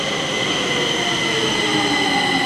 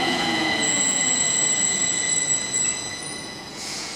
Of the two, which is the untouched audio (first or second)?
first